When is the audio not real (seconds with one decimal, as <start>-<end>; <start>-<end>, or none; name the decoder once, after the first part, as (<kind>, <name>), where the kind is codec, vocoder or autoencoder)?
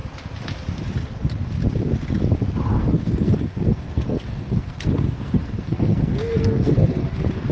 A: 2.7-7.1 (codec, SNAC)